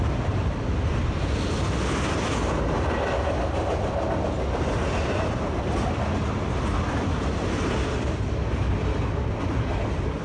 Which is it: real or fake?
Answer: real